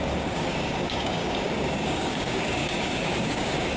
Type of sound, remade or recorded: remade